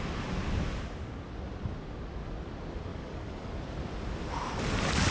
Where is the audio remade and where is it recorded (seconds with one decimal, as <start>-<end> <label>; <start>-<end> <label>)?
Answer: 0.0-2.9 recorded; 2.9-3.5 remade; 3.5-5.1 recorded